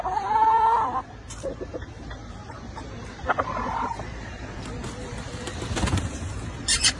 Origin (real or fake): fake